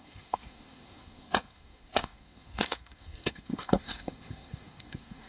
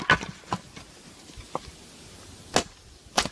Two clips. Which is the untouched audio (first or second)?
second